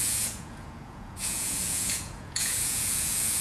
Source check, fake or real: fake